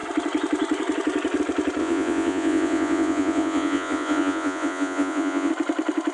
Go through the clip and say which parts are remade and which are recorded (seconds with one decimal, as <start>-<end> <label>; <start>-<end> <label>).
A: 0.0-1.8 recorded; 1.8-5.5 remade; 5.5-6.1 recorded